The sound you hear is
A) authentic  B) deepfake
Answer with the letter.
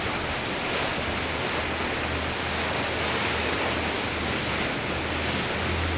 A